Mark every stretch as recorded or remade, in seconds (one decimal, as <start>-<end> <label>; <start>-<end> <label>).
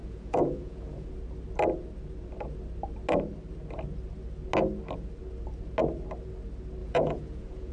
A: 0.0-1.1 remade; 1.1-6.8 recorded; 6.8-7.7 remade